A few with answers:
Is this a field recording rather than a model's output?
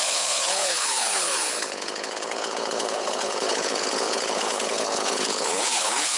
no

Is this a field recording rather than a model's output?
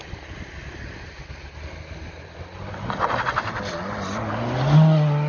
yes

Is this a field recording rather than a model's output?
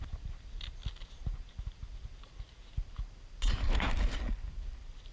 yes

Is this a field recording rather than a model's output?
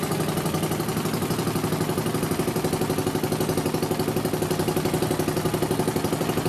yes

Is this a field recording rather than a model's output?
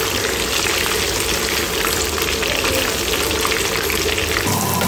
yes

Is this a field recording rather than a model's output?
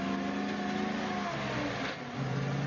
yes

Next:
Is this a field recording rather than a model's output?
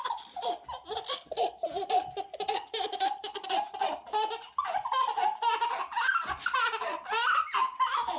yes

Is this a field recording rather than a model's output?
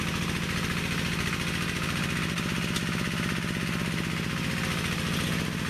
yes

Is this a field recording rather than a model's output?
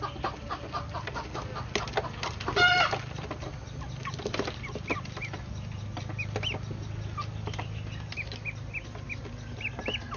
yes